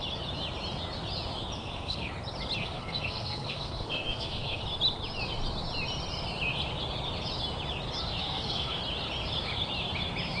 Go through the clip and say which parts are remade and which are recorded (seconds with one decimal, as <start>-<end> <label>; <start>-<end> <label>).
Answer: 0.0-1.6 recorded; 1.6-2.1 remade; 2.1-2.6 recorded; 2.6-4.6 remade; 4.6-8.2 recorded; 8.2-8.8 remade; 8.8-10.4 recorded